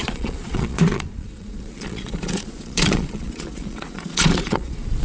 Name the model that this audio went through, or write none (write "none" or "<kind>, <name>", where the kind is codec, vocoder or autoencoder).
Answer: vocoder, Vocos